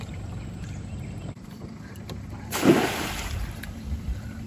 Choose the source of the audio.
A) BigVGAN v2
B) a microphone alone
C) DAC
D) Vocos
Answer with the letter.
A